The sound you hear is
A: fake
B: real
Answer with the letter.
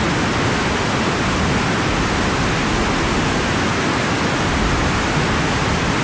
B